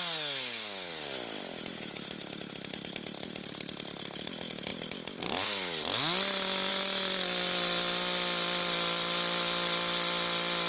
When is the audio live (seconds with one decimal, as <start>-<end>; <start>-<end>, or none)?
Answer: 0.0-10.7